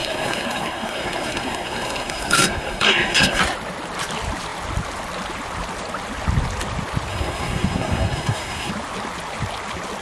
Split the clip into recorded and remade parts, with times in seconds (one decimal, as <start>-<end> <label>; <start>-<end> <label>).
0.0-3.4 remade; 3.4-7.1 recorded; 7.1-8.7 remade; 8.7-10.0 recorded